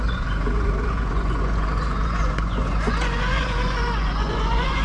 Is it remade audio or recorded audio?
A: remade